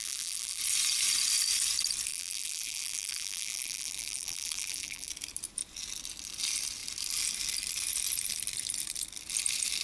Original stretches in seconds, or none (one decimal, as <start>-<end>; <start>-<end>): 0.6-2.1; 5.1-9.8